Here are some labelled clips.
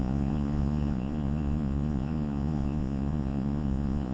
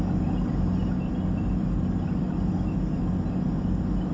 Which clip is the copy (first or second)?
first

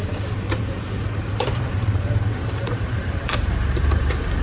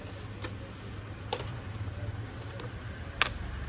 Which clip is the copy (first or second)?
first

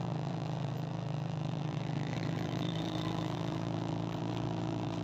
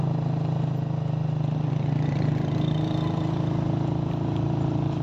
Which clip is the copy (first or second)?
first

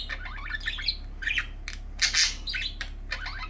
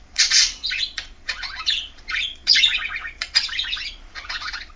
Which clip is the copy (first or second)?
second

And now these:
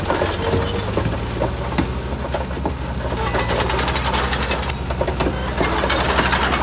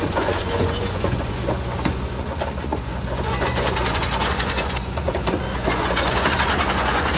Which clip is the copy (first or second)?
second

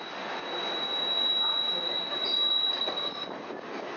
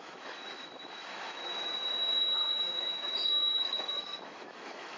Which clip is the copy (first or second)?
second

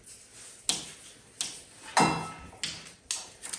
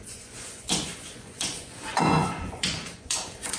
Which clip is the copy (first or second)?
second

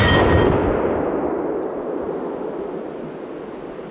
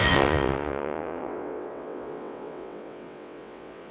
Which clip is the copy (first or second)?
second